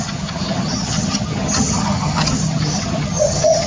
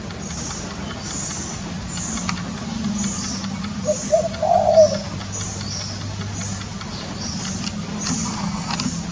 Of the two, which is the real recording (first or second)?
second